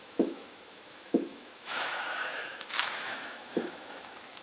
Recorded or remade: remade